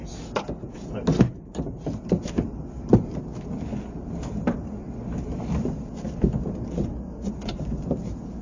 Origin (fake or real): real